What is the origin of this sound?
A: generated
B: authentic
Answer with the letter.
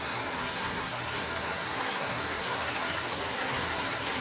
A